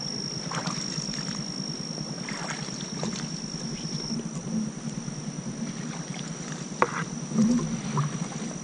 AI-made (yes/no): yes